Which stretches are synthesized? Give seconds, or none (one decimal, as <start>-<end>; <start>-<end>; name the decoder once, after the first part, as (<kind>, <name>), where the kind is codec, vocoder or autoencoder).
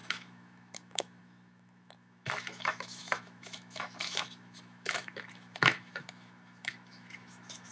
0.0-7.7 (autoencoder, DAC-VAE)